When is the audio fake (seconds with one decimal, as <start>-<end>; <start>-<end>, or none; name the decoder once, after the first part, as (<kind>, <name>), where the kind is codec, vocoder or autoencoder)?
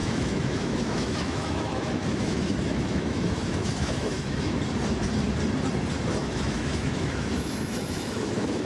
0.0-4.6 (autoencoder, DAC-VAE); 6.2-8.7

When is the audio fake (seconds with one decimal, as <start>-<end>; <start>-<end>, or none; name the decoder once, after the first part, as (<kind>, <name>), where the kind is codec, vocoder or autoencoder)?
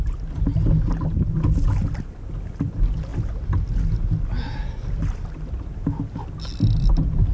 none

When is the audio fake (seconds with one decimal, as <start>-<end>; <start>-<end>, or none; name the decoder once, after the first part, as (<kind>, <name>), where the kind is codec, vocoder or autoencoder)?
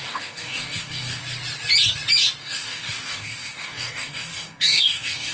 0.0-1.2 (codec, DAC); 2.4-5.3